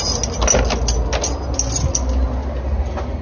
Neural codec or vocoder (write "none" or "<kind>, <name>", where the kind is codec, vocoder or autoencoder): none